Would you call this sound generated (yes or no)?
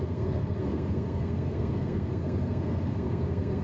yes